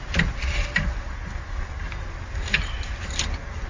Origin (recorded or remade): recorded